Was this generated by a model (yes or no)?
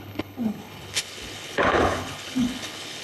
yes